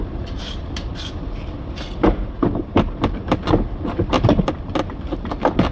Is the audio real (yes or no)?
yes